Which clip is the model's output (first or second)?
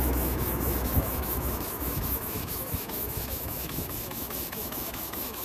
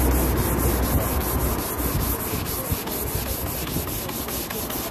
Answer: first